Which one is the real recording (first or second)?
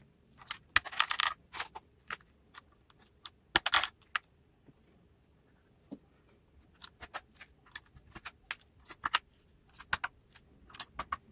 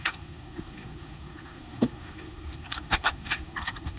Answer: first